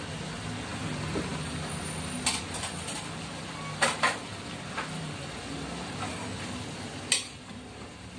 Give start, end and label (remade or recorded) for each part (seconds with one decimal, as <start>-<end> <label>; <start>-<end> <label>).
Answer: 0.0-8.2 recorded